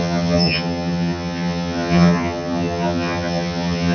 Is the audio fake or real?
fake